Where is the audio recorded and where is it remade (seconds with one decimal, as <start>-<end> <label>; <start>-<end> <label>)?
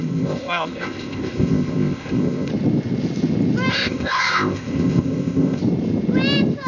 0.0-2.5 remade; 2.5-3.7 recorded; 3.7-5.6 remade; 5.6-6.7 recorded